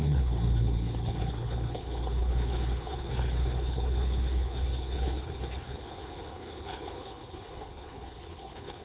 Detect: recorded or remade remade